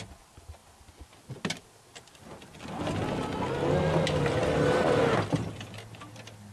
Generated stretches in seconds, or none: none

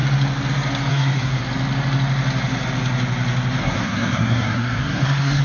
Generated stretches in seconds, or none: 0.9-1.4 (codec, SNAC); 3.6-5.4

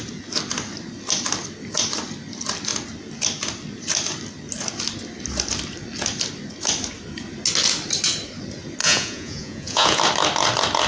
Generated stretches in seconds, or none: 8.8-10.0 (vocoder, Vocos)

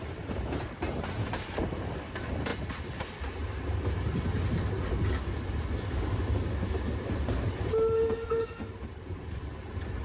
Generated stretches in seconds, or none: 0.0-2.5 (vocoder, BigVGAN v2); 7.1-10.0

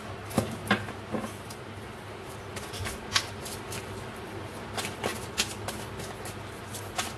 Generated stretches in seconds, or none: none